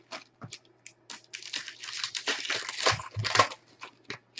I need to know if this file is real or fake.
real